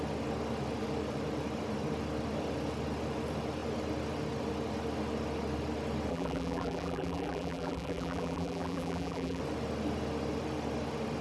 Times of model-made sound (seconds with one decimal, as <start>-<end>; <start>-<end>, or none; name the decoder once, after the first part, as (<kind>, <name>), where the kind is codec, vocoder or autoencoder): 6.1-9.4 (vocoder, BigVGAN v2)